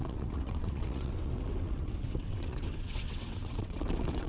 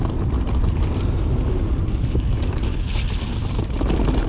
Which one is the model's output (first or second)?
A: first